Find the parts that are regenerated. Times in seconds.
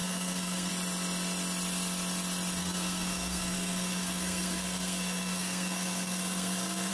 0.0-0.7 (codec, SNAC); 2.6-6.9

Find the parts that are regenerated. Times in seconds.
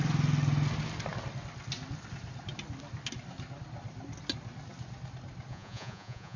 5.5-6.4 (vocoder, Vocos)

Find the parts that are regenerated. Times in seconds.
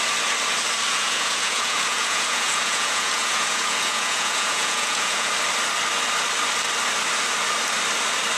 0.9-5.3 (vocoder, Vocos)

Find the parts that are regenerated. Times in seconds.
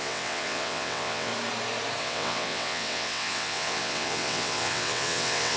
0.0-1.3 (vocoder, WaveNeXt); 2.0-5.6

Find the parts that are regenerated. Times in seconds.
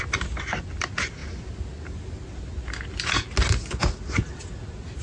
none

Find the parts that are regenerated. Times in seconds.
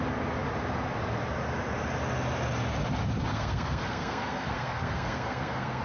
3.3-5.8 (codec, SNAC)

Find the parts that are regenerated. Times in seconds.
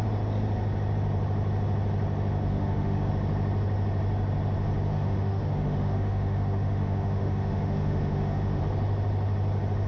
2.5-3.1 (autoencoder, DAC-VAE); 4.9-8.6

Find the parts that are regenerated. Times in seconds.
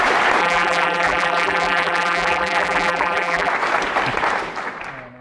0.4-3.5 (vocoder, BigVGAN v2)